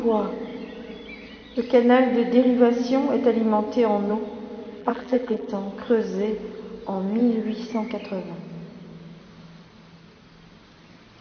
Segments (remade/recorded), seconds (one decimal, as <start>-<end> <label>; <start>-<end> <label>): 0.0-4.8 recorded; 4.8-5.5 remade; 5.5-11.2 recorded